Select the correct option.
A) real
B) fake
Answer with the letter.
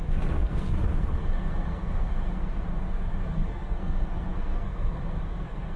B